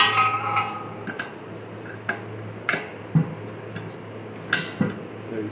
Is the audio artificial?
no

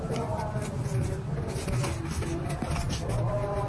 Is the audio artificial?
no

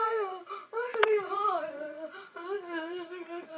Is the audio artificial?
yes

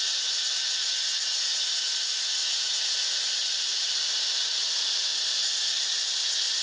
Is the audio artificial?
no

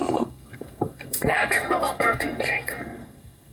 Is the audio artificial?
yes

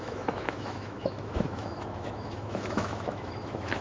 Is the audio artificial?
yes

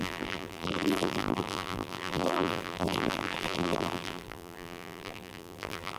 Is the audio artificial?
yes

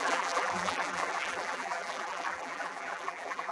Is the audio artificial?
yes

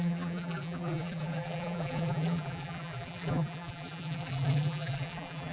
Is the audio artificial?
yes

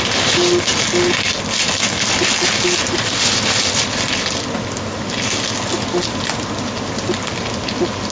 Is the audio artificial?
no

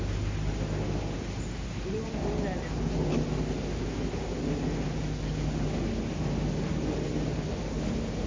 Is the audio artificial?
no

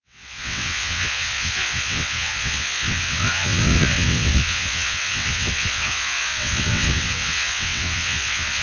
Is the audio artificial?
yes